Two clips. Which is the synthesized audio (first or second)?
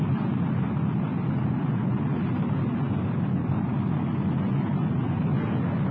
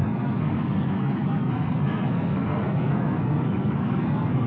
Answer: second